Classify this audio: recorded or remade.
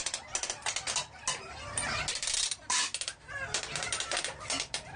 recorded